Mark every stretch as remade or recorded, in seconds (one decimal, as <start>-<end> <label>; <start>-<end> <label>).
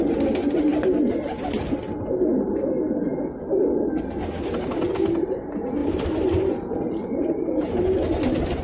0.0-5.8 recorded; 5.8-7.8 remade; 7.8-8.6 recorded